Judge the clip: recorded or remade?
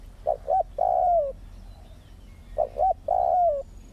recorded